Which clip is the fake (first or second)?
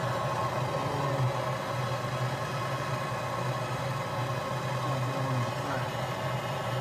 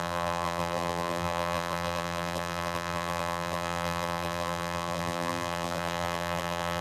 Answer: second